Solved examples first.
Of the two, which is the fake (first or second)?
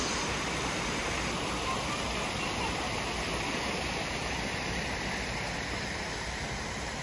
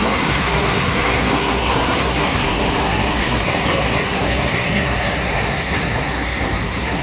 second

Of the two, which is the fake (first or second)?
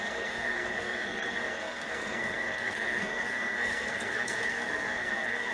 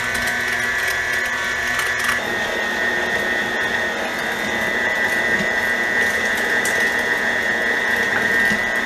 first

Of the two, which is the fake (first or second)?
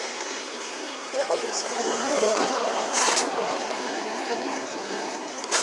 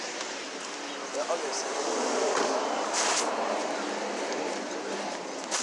first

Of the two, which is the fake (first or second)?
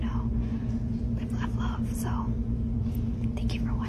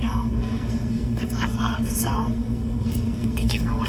second